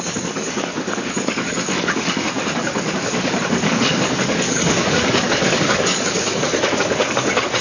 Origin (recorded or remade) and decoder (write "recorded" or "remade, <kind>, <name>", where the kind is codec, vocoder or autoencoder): remade, codec, DAC